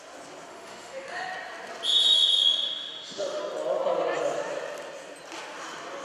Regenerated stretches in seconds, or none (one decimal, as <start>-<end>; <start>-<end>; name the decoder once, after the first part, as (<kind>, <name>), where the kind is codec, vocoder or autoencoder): 0.5-1.3 (autoencoder, DAC-VAE); 2.4-3.4